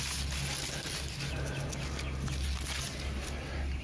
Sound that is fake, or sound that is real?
real